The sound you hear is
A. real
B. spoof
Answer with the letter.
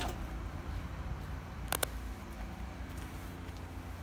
A